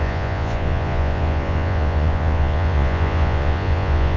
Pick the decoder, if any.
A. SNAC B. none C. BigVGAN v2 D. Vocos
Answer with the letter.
D